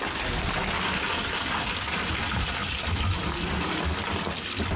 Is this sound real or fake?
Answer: real